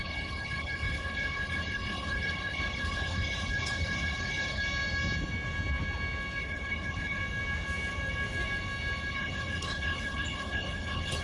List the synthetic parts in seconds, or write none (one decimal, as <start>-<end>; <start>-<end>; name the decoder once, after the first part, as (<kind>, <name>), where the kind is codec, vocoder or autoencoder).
0.0-4.6 (codec, HILCodec); 6.4-7.2; 9.1-11.2